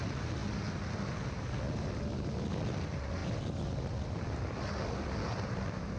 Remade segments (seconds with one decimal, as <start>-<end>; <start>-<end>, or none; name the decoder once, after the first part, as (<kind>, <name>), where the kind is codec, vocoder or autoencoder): 3.2-6.0 (vocoder, BigVGAN v2)